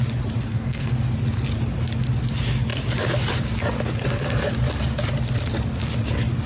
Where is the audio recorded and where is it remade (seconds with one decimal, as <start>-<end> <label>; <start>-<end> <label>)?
0.0-0.5 recorded; 0.5-1.0 remade; 1.0-6.5 recorded